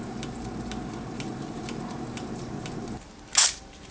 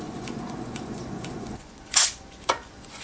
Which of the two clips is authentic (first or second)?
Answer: first